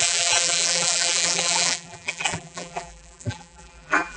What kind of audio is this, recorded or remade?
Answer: remade